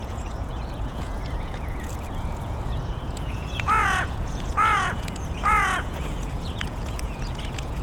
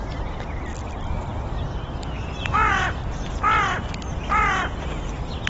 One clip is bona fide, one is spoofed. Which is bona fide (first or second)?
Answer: second